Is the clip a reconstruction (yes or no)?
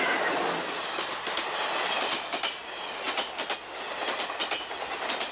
no